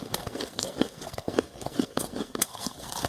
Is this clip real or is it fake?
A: fake